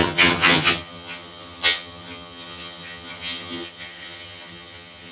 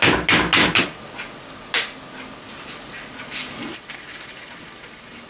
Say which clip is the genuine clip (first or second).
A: second